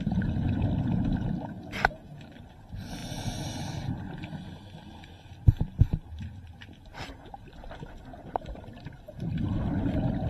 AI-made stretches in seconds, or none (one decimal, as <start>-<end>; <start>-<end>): none